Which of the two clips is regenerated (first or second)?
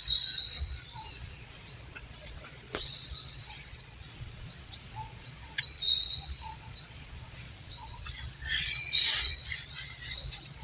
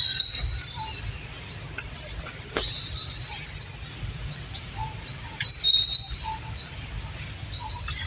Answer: first